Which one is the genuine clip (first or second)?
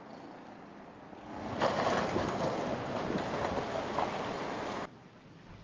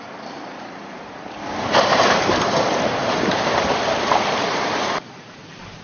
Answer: first